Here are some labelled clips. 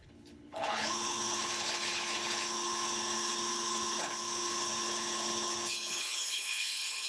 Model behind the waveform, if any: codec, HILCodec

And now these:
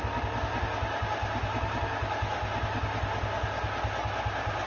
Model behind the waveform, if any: none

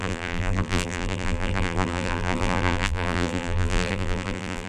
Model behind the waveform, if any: vocoder, BigVGAN v2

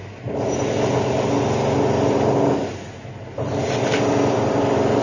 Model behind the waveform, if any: none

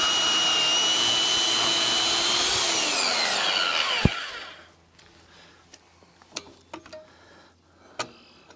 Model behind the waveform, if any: none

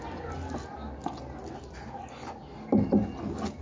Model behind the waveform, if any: none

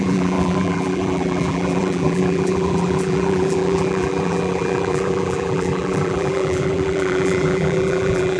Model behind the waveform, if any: vocoder, BigVGAN v2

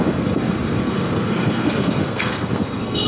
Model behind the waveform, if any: codec, SNAC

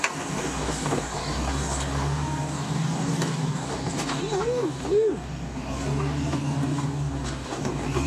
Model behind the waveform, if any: codec, DAC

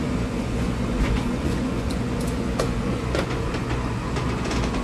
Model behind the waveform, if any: vocoder, Vocos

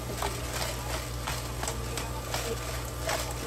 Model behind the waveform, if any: none